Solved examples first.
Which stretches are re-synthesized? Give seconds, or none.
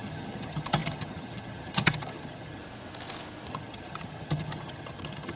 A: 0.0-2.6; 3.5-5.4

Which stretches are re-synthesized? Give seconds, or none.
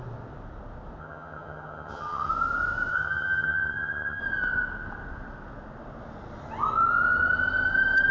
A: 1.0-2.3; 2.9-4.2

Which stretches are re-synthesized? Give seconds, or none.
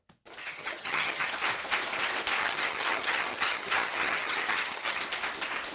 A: 0.4-1.3; 2.4-5.0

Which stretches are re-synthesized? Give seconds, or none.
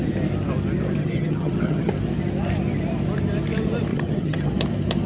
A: 1.0-1.9; 3.9-4.5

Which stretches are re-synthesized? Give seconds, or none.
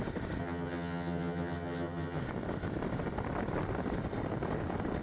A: 0.4-2.2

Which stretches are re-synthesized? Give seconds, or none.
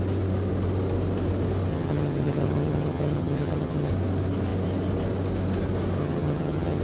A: 1.7-3.9; 6.0-6.8